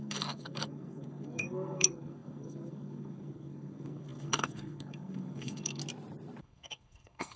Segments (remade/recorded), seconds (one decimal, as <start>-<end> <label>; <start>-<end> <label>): 0.0-5.8 remade; 5.8-6.4 recorded; 6.4-7.4 remade

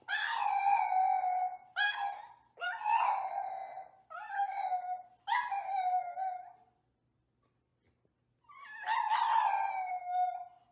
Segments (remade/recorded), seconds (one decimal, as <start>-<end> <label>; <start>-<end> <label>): 0.0-10.7 recorded

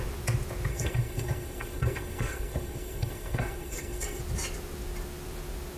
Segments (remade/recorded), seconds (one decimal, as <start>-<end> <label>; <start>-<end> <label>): 0.0-0.7 recorded; 0.7-4.2 remade; 4.2-5.8 recorded

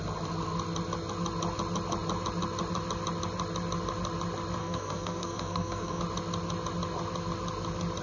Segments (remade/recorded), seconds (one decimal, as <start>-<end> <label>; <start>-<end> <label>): 0.0-4.6 recorded; 4.6-6.0 remade; 6.0-8.0 recorded

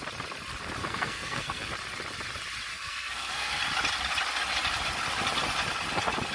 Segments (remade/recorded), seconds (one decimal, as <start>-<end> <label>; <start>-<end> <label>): 0.0-0.8 recorded; 0.8-1.7 remade; 1.7-2.7 recorded; 2.7-3.6 remade; 3.6-6.3 recorded

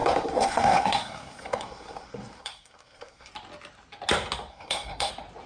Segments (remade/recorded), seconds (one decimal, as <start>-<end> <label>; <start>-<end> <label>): 0.0-3.3 remade; 3.3-4.5 recorded; 4.5-5.1 remade; 5.1-5.5 recorded